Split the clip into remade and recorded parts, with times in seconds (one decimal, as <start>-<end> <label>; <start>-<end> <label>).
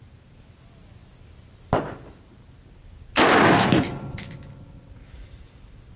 0.0-6.0 recorded